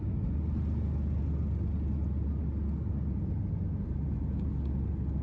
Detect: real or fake real